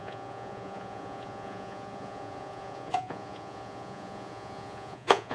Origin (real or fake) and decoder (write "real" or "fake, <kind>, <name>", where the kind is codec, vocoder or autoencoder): fake, vocoder, Vocos